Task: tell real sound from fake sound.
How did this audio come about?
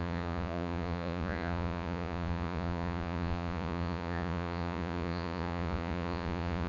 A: fake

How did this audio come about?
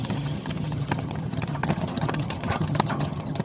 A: fake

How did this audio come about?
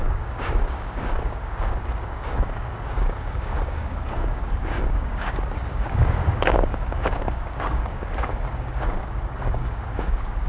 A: fake